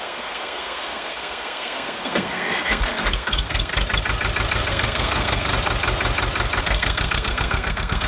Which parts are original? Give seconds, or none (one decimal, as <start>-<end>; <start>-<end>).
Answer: 3.7-4.7; 5.5-6.6